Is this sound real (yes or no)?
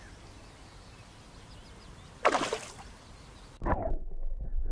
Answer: yes